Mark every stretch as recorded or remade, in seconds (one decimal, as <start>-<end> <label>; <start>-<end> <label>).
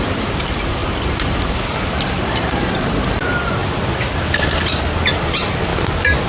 0.0-3.6 remade; 3.6-5.0 recorded; 5.0-5.7 remade; 5.7-6.3 recorded